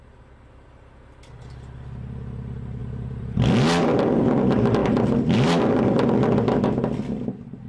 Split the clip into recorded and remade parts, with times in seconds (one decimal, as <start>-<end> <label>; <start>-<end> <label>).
0.0-2.8 recorded; 2.8-3.5 remade; 3.5-4.8 recorded; 4.8-5.5 remade; 5.5-7.7 recorded